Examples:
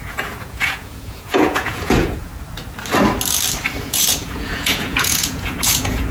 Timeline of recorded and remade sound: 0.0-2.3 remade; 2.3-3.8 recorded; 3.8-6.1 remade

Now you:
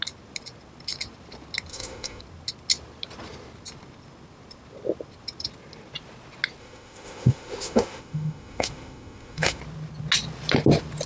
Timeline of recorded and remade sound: 0.0-1.7 recorded; 1.7-2.2 remade; 2.2-6.6 recorded; 6.6-9.6 remade; 9.6-11.1 recorded

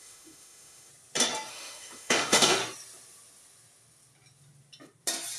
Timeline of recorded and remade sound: 0.0-0.9 remade; 0.9-1.5 recorded; 1.5-2.6 remade; 2.6-5.4 recorded

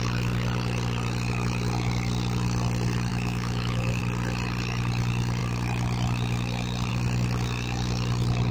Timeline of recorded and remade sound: 0.0-3.1 recorded; 3.1-4.0 remade; 4.0-8.5 recorded

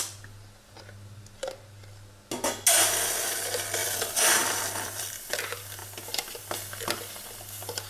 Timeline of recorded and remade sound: 0.0-3.8 recorded; 3.8-5.1 remade; 5.1-7.9 recorded

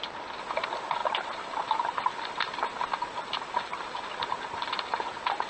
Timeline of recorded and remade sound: 0.0-5.5 recorded